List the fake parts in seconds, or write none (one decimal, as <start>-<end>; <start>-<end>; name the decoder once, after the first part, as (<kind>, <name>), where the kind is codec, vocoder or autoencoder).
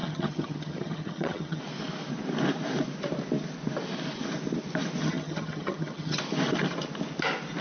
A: 0.0-1.6 (vocoder, HiFi-GAN); 5.0-6.2